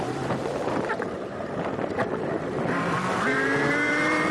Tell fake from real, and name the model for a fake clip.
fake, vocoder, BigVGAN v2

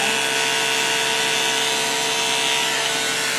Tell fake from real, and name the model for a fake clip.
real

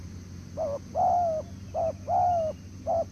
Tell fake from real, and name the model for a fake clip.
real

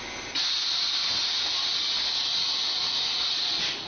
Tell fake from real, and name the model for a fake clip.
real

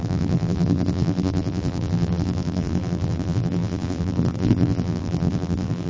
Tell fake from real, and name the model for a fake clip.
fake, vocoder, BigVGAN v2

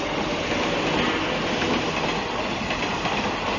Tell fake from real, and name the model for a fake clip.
real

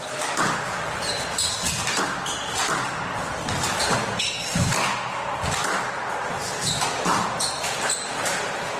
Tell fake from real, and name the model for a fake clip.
real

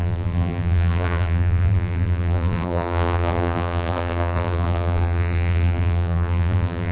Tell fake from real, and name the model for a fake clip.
fake, vocoder, BigVGAN v2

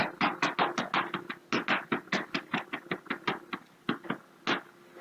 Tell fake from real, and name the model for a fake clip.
real